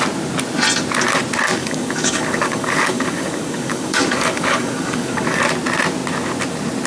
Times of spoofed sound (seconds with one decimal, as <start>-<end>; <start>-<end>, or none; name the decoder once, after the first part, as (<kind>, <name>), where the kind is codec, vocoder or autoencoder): 1.6-5.4 (codec, DAC)